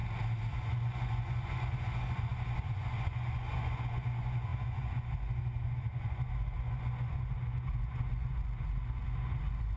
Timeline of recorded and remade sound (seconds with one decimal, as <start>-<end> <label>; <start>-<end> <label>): 0.0-0.5 recorded; 0.5-9.8 remade